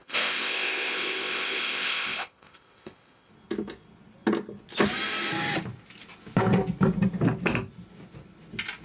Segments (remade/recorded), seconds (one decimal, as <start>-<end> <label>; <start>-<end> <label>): 0.0-3.3 remade; 3.3-8.8 recorded